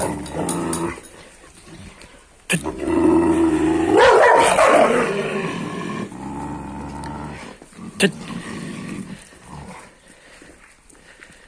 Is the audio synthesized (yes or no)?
no